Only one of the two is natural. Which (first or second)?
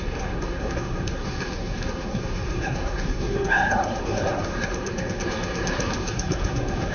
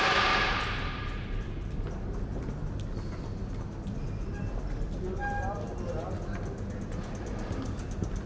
second